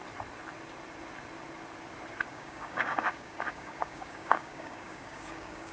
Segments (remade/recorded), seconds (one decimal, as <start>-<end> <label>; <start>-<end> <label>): 0.0-2.3 recorded; 2.3-5.7 remade